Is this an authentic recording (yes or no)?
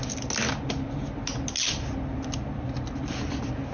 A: yes